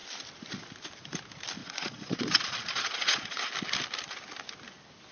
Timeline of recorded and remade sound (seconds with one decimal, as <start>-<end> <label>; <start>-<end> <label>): 0.0-1.6 recorded; 1.6-3.5 remade; 3.5-5.1 recorded